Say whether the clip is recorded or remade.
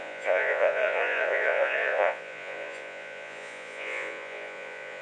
remade